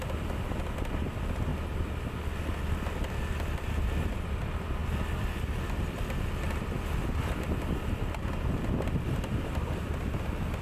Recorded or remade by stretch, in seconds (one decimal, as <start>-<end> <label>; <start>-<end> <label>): 0.0-10.6 recorded